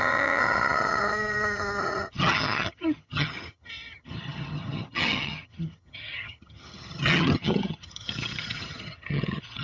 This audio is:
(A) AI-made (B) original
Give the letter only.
A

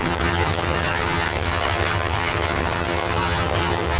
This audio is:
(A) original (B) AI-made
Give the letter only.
B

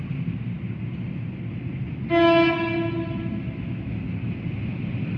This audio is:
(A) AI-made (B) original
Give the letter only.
B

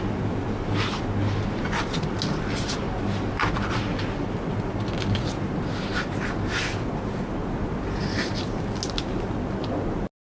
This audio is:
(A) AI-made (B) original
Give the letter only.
B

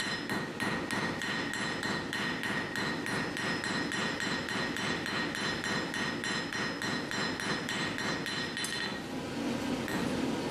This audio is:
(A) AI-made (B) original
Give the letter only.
B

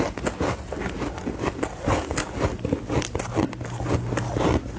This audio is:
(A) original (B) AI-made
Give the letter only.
A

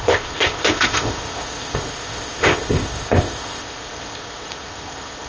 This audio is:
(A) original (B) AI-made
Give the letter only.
B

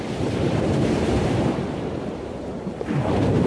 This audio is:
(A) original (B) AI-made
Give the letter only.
B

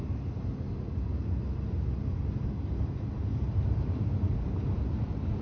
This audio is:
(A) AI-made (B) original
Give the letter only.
B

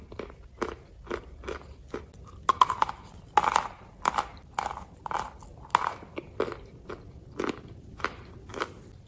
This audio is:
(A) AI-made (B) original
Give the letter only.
B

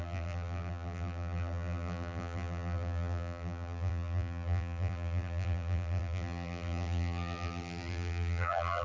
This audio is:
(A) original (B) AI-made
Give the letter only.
B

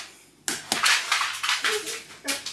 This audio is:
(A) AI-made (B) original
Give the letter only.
B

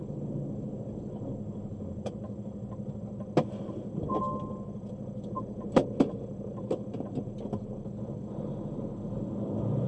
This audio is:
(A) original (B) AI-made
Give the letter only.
A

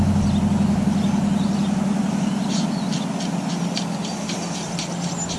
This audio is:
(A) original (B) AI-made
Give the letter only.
A